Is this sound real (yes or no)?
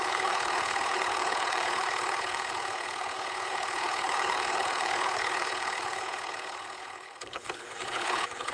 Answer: no